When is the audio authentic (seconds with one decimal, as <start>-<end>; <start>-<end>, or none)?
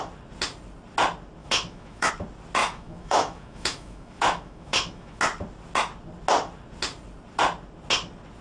0.0-1.4; 2.1-2.6; 5.2-8.4